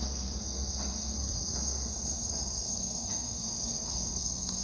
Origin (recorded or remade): remade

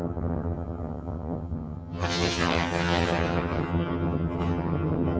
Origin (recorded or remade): remade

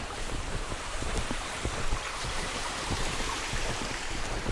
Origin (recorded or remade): remade